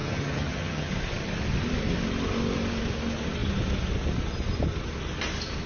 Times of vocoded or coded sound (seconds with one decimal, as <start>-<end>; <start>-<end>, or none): 0.0-0.9